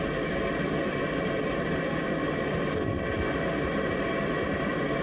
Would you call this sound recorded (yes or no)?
yes